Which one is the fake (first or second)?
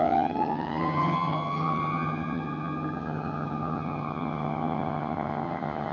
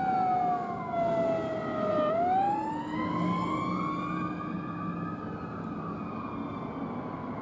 first